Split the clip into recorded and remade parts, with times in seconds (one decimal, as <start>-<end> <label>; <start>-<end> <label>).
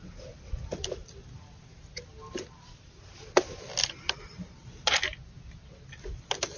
0.0-6.6 recorded